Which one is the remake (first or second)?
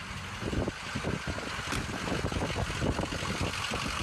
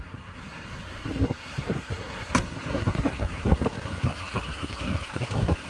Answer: second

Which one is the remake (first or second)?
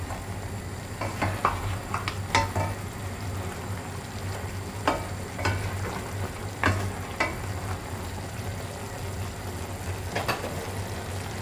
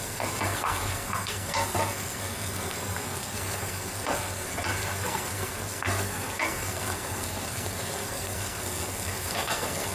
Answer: second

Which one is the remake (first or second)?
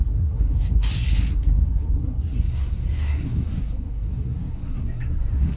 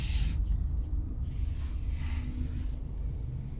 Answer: first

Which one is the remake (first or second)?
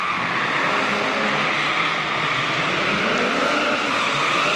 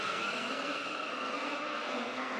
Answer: second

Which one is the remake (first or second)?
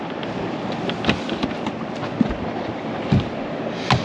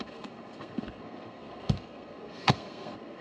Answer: second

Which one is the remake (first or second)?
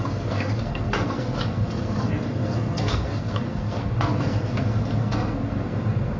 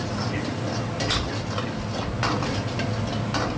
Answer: first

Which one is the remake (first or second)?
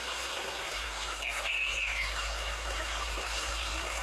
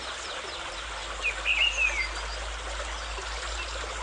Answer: first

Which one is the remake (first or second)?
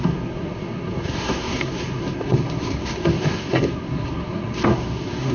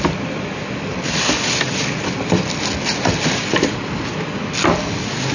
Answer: first